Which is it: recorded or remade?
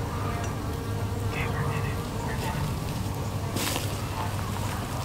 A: recorded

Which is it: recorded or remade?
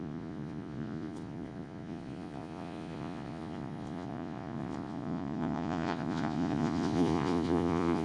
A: remade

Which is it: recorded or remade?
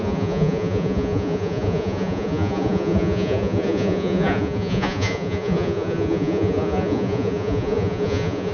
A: remade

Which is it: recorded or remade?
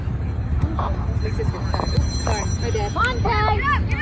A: recorded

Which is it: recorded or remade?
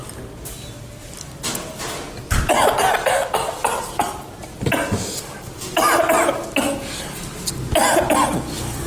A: recorded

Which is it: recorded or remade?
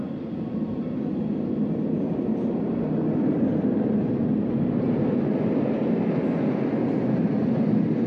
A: recorded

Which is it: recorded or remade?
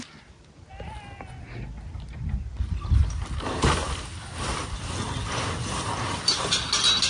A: recorded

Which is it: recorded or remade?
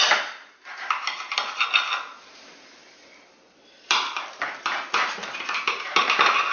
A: recorded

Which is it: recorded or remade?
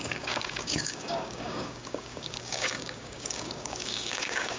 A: remade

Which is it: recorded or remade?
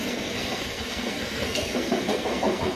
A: remade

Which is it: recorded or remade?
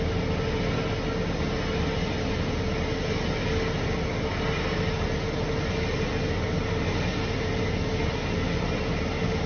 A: recorded